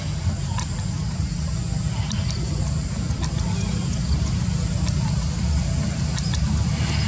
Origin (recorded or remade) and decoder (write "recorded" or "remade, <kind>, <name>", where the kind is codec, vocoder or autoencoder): recorded